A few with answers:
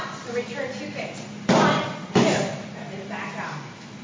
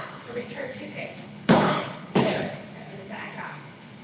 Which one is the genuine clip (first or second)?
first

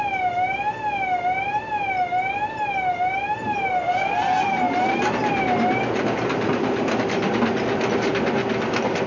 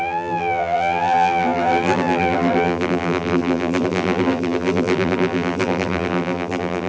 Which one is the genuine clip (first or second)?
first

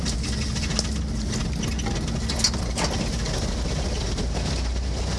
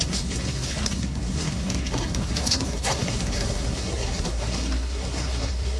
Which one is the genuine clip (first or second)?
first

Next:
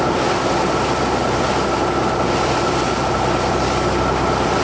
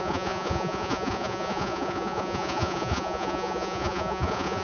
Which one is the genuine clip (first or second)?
first